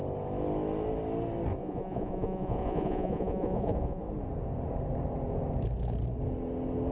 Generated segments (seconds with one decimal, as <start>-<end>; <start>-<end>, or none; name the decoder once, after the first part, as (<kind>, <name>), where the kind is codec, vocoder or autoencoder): 1.6-4.0 (vocoder, Vocos)